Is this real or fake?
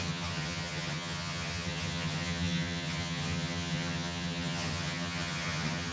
fake